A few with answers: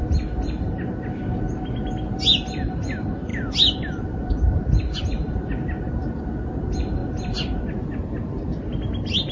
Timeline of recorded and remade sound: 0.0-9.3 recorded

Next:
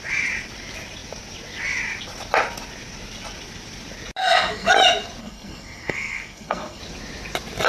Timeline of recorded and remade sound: 0.0-4.2 recorded; 4.2-4.7 remade; 4.7-5.2 recorded; 5.2-6.8 remade; 6.8-7.7 recorded

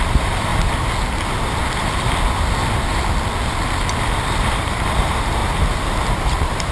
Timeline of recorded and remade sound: 0.0-0.5 remade; 0.5-4.5 recorded; 4.5-5.4 remade; 5.4-6.1 recorded; 6.1-6.7 remade

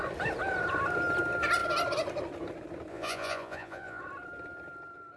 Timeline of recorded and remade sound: 0.0-2.9 recorded; 2.9-4.0 remade; 4.0-5.2 recorded

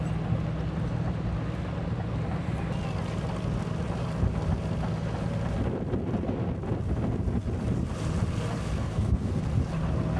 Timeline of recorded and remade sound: 0.0-8.8 recorded; 8.8-9.4 remade; 9.4-10.2 recorded